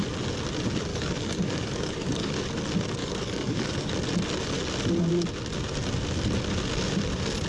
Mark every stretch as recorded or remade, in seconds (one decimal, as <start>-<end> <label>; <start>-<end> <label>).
0.0-0.9 recorded; 0.9-2.3 remade; 2.3-3.0 recorded; 3.0-3.9 remade; 3.9-7.5 recorded